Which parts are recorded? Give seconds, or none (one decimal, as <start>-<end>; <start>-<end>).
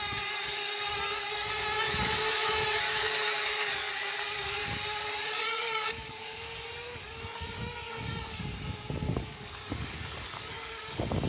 4.6-5.2